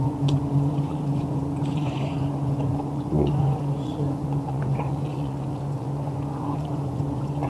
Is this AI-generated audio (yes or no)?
yes